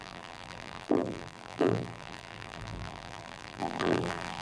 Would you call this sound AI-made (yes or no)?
yes